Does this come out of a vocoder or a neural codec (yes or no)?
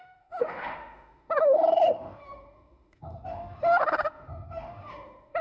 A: yes